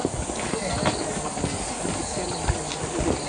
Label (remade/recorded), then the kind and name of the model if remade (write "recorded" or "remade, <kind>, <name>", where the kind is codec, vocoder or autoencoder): recorded